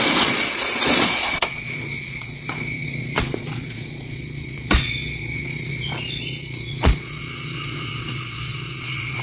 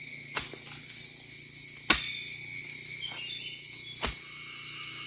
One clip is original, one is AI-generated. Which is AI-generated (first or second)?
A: first